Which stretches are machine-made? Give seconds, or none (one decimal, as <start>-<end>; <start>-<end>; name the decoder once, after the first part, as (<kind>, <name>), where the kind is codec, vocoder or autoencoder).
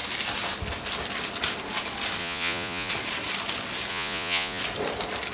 2.2-2.9 (vocoder, Vocos); 3.9-4.6